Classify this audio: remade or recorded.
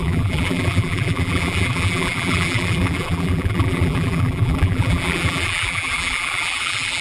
remade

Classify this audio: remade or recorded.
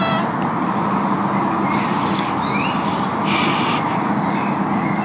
recorded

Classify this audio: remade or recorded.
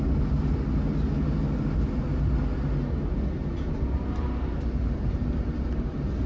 recorded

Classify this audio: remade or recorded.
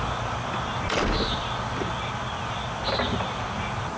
recorded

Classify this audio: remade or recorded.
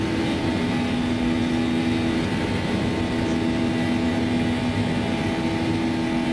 recorded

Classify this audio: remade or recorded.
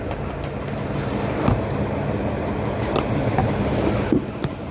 recorded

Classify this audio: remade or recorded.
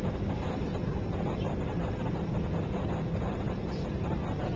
recorded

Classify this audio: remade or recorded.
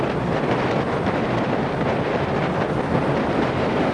recorded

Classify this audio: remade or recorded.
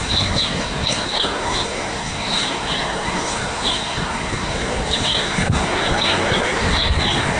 remade